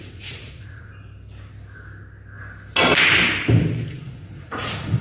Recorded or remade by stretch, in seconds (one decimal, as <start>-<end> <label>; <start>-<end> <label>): 0.0-0.9 remade; 0.9-3.9 recorded; 3.9-5.0 remade